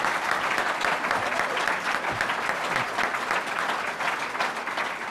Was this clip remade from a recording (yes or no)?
no